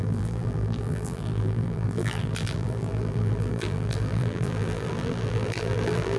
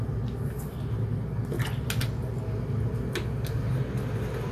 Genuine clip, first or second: second